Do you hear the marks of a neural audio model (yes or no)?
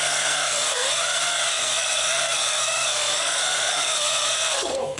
yes